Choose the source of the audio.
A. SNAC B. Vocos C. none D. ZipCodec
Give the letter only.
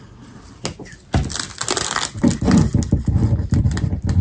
C